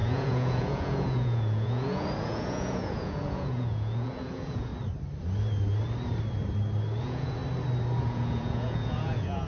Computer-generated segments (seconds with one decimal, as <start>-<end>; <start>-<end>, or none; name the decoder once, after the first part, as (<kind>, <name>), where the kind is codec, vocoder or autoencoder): 0.0-4.7 (vocoder, Vocos); 7.0-7.4; 8.0-9.5